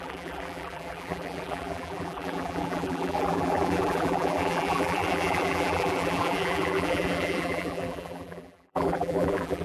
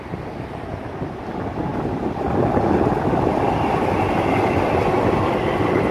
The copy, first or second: first